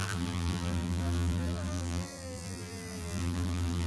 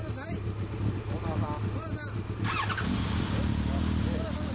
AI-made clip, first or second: first